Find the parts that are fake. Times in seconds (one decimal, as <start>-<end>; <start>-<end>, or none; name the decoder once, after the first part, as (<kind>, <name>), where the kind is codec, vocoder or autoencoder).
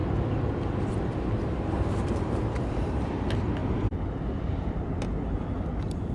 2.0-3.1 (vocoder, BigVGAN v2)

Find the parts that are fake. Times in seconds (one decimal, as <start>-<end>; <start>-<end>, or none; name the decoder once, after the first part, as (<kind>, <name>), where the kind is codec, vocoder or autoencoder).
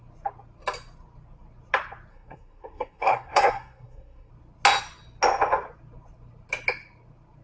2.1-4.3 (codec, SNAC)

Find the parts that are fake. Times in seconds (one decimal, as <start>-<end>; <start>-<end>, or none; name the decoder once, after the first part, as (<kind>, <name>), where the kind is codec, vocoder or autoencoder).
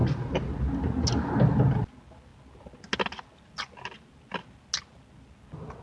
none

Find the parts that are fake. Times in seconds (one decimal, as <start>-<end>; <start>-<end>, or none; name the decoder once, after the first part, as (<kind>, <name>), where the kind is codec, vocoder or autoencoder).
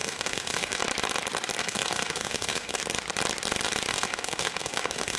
0.0-0.8 (autoencoder, DAC-VAE); 1.6-2.8; 3.9-5.2